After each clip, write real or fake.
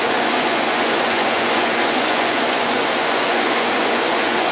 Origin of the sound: fake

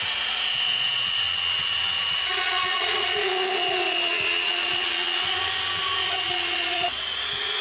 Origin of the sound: fake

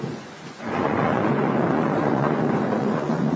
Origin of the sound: fake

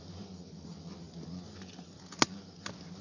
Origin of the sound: real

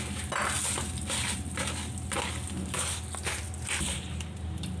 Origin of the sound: real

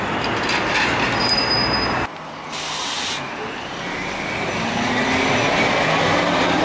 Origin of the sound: real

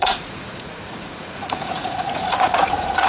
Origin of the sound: fake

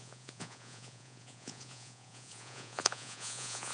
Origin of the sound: fake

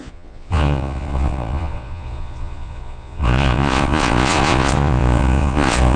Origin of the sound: fake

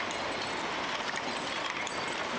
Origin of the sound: real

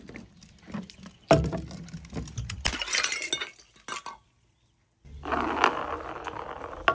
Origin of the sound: real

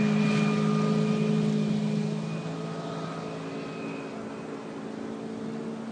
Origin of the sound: real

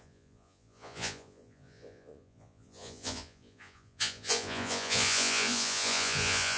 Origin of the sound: fake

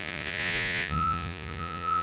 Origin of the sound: fake